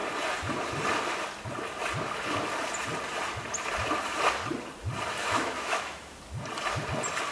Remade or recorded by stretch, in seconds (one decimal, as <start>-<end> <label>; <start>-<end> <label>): 0.0-5.2 recorded; 5.2-6.2 remade; 6.2-7.3 recorded